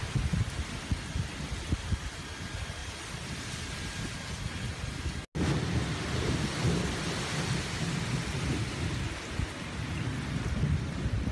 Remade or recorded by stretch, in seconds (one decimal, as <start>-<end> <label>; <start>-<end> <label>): 0.0-2.8 recorded; 2.8-3.5 remade; 3.5-11.3 recorded